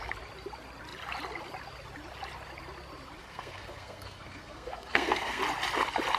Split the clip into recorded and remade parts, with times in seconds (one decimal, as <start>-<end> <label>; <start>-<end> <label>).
0.0-3.2 recorded; 3.2-5.4 remade; 5.4-6.2 recorded